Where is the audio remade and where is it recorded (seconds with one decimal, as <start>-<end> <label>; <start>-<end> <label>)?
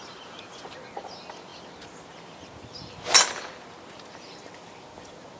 0.0-5.4 recorded